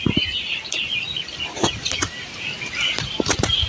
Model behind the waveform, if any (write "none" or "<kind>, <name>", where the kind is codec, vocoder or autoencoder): none